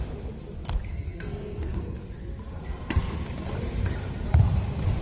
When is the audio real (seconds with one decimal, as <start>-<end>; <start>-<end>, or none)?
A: 0.0-0.9; 2.0-5.0